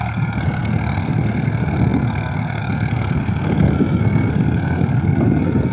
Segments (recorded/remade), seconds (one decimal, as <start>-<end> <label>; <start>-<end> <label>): 0.0-5.7 remade